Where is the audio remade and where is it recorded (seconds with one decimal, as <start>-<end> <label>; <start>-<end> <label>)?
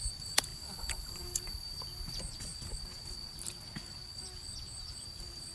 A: 0.0-0.5 remade; 0.5-1.4 recorded; 1.4-2.5 remade; 2.5-5.0 recorded; 5.0-5.5 remade